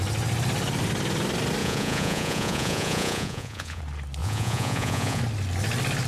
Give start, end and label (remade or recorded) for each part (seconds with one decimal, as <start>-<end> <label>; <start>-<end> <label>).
0.0-1.6 recorded; 1.6-3.8 remade; 3.8-4.2 recorded; 4.2-5.2 remade; 5.2-6.1 recorded